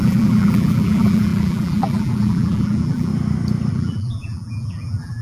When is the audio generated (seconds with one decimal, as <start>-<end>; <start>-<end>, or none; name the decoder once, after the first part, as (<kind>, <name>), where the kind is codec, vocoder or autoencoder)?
0.0-3.1 (vocoder, BigVGAN v2); 3.7-5.2